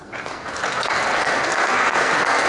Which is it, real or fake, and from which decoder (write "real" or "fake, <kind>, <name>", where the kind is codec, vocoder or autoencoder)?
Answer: fake, codec, SNAC